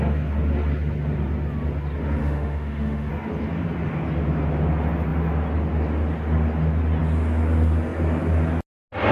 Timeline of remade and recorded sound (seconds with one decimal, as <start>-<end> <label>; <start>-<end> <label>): 0.0-2.2 recorded; 2.2-3.1 remade; 3.1-9.1 recorded